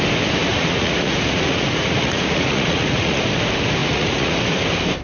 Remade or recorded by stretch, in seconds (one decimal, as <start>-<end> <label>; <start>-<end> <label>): 0.0-0.5 recorded; 0.5-3.2 remade; 3.2-3.8 recorded; 3.8-4.4 remade; 4.4-5.0 recorded

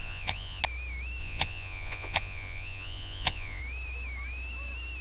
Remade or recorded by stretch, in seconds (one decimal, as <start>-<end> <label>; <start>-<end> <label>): 0.0-0.6 remade; 0.6-1.2 recorded; 1.2-3.6 remade; 3.6-5.0 recorded